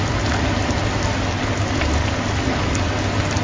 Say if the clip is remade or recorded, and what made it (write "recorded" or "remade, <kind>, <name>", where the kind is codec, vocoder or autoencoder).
recorded